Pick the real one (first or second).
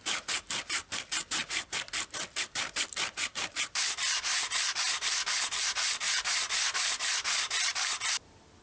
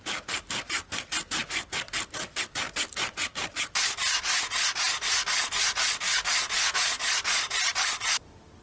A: second